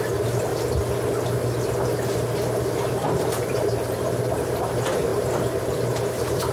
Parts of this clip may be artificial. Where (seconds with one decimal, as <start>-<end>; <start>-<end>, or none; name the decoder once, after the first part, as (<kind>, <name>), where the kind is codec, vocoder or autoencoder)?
0.0-0.5 (vocoder, BigVGAN v2); 2.0-6.5

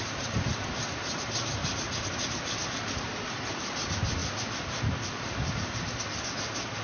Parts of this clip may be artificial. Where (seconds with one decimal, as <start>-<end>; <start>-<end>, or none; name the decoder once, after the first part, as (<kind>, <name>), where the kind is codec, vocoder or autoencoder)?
0.0-4.2 (vocoder, BigVGAN v2); 5.5-6.8

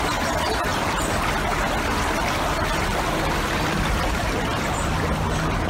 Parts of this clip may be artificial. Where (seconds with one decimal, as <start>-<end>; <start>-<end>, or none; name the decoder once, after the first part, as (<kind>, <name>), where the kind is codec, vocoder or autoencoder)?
none

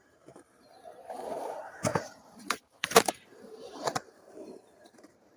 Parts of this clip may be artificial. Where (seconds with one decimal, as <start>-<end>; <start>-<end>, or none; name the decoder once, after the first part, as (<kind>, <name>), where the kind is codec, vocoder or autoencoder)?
0.0-5.4 (vocoder, BigVGAN v2)

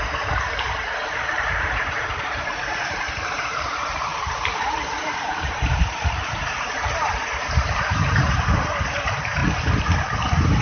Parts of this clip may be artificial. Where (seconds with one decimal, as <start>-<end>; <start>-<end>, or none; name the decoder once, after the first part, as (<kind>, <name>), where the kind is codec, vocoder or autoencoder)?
0.0-9.4 (vocoder, BigVGAN v2)

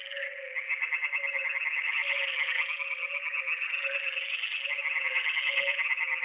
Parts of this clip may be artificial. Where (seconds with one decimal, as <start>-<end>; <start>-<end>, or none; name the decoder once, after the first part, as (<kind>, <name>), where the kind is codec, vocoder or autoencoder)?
none

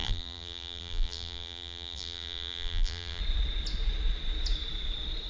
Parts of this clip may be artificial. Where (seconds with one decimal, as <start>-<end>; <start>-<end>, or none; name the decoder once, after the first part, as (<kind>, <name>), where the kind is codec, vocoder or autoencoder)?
0.0-3.2 (vocoder, BigVGAN v2)

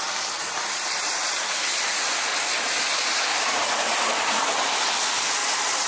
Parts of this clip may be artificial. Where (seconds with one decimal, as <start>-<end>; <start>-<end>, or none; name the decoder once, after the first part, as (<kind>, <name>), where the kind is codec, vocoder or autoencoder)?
0.0-2.3 (vocoder, BigVGAN v2); 2.8-5.4